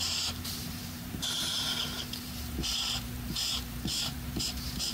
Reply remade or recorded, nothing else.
remade